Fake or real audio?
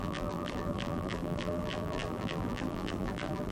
fake